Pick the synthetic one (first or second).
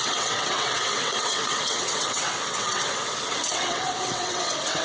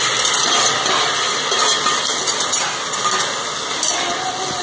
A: first